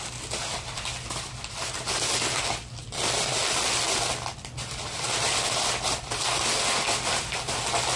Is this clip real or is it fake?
real